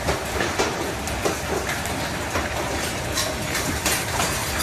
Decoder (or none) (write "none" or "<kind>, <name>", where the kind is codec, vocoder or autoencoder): vocoder, BigVGAN v2